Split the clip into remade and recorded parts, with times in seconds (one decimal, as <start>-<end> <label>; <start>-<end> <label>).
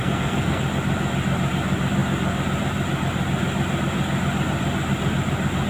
0.0-0.6 remade; 0.6-5.7 recorded